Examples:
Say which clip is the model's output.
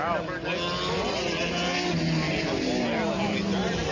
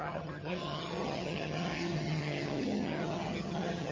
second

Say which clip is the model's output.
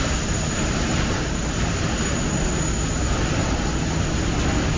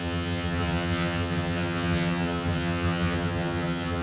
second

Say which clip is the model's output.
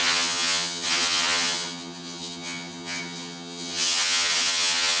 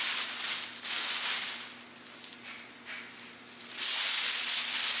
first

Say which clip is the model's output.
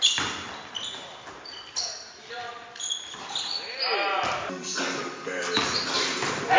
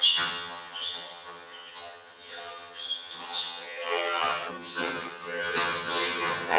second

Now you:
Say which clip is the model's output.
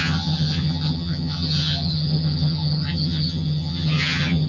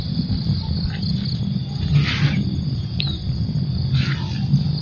first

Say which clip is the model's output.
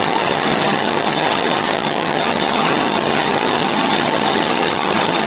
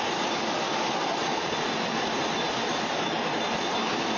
first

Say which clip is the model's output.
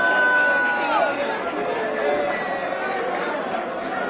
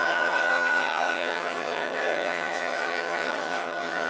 second